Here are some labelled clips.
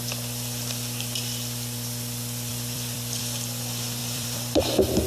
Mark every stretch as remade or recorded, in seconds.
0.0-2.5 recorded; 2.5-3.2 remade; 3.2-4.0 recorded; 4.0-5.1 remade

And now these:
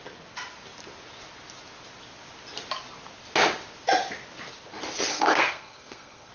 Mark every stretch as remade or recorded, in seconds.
0.0-5.1 recorded; 5.1-6.3 remade

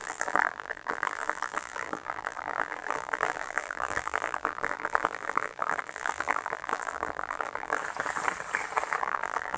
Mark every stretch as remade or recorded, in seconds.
0.0-7.8 remade; 7.8-9.0 recorded; 9.0-9.6 remade

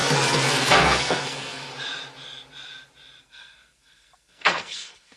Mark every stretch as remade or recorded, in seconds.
0.0-1.7 remade; 1.7-3.2 recorded; 3.2-5.2 remade

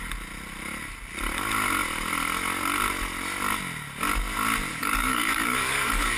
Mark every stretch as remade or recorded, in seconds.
0.0-4.7 recorded; 4.7-6.2 remade

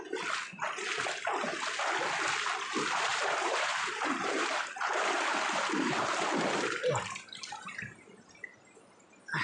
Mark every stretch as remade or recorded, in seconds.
0.0-3.1 recorded; 3.1-8.1 remade; 8.1-9.4 recorded

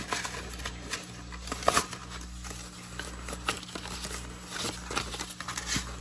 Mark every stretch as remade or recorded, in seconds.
0.0-6.0 recorded

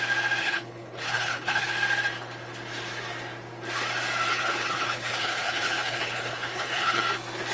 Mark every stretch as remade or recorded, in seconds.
0.0-0.4 recorded; 0.4-1.7 remade; 1.7-4.3 recorded; 4.3-7.0 remade; 7.0-7.5 recorded